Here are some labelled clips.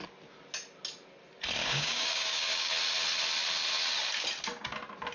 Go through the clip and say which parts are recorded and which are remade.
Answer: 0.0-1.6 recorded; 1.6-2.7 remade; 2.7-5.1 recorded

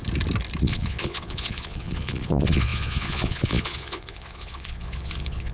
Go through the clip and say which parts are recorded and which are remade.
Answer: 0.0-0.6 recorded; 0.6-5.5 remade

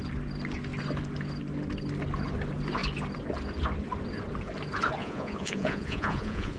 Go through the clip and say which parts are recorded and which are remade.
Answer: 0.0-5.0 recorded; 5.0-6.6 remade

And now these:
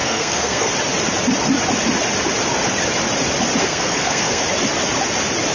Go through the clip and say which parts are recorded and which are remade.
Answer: 0.0-0.7 remade; 0.7-3.6 recorded; 3.6-4.4 remade; 4.4-5.5 recorded